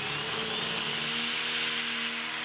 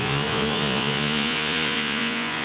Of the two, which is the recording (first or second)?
first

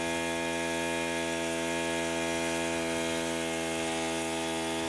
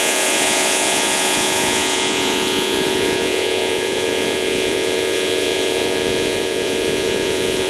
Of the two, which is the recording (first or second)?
first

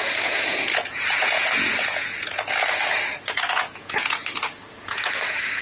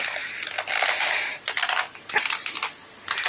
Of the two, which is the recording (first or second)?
second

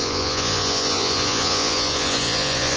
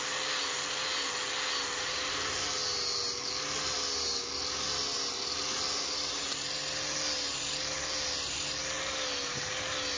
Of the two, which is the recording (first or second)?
second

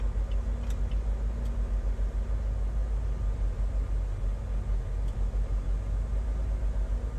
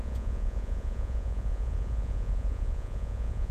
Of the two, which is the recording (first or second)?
first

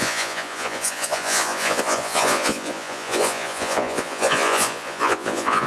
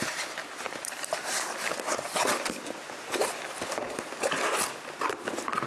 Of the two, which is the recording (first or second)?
second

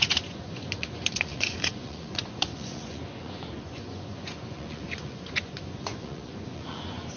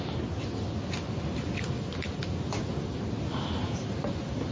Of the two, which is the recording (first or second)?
second